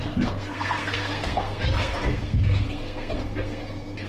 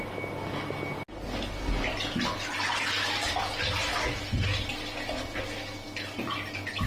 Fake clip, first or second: first